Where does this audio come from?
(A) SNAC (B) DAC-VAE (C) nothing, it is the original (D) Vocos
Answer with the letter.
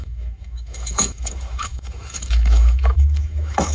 B